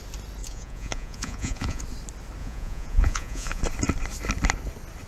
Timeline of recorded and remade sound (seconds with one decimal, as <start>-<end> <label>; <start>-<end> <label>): 0.0-0.4 recorded; 0.4-1.8 remade; 1.8-2.4 recorded; 2.4-3.6 remade; 3.6-5.1 recorded